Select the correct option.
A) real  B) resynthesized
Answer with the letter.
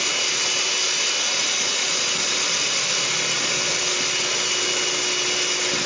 A